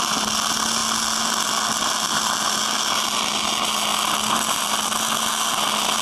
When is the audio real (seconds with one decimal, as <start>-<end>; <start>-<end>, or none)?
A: 0.0-6.0